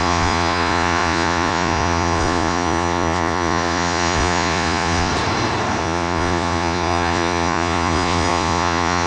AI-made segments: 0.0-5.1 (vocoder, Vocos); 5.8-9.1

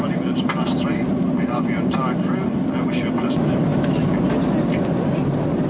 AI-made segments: none

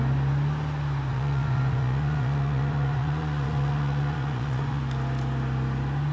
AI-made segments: 1.1-4.8 (vocoder, Vocos)

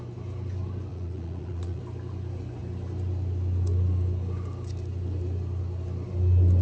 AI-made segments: 0.9-1.8 (vocoder, Vocos)

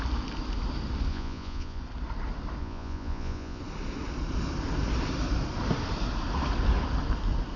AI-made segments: 1.1-1.8 (vocoder, Vocos); 2.6-3.6

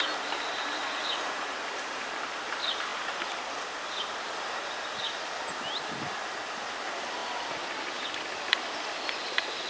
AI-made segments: 0.8-1.6 (vocoder, Vocos)